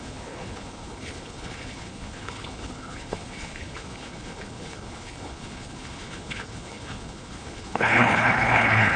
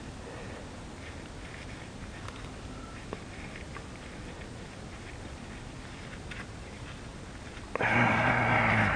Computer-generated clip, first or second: first